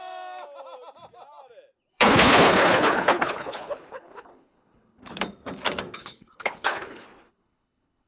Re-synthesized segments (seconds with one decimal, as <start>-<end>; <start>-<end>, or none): 1.9-5.2; 6.0-8.1